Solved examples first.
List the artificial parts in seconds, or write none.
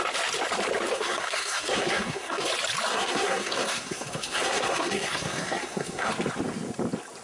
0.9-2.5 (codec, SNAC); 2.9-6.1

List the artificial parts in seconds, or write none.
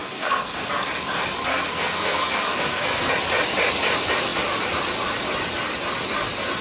0.0-0.7 (codec, SNAC); 1.5-3.1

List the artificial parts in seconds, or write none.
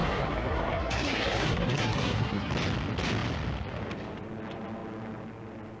0.0-2.5 (codec, SNAC)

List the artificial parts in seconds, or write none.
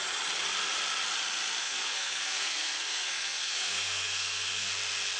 1.6-4.7 (codec, SNAC)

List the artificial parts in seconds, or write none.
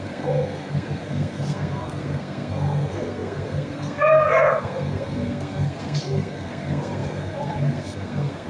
0.0-8.5 (codec, SNAC)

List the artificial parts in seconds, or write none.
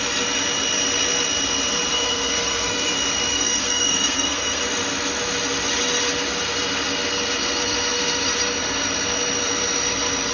1.9-2.9 (codec, SNAC); 3.3-4.6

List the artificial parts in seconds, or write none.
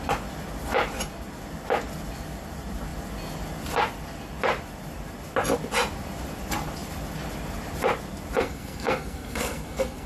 8.4-10.1 (codec, SNAC)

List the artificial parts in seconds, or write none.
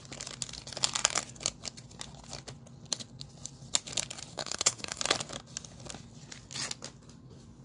4.3-5.0 (codec, SNAC)